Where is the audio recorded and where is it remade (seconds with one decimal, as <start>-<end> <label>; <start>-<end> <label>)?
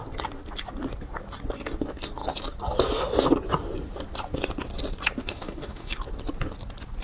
0.0-5.2 recorded; 5.2-6.0 remade; 6.0-7.0 recorded